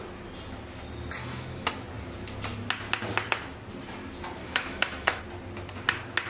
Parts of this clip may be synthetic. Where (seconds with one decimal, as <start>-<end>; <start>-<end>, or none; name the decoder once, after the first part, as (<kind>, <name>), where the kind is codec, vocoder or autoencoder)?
1.2-1.7 (autoencoder, DAC-VAE); 4.4-5.2